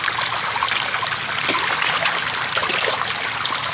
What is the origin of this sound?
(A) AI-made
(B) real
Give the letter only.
B